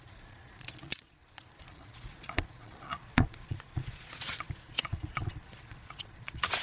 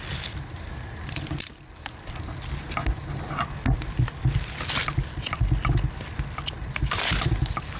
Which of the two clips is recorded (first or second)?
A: second